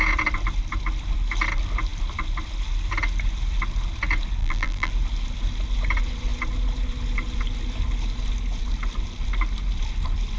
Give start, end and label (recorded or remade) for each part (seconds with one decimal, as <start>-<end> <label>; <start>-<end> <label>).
0.0-4.4 recorded; 4.4-4.9 remade; 4.9-10.4 recorded